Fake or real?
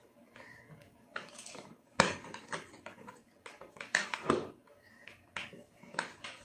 fake